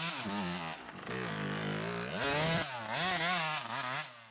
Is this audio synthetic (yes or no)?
no